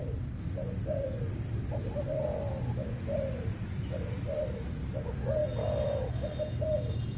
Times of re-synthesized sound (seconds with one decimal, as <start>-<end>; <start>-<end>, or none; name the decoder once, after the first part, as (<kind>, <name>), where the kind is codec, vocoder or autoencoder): 0.0-1.9 (vocoder, BigVGAN v2); 3.5-4.8; 5.4-6.4